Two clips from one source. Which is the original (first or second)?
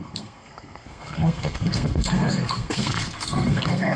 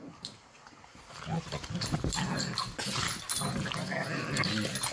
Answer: second